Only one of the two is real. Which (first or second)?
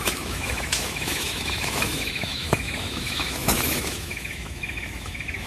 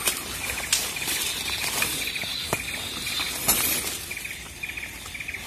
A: second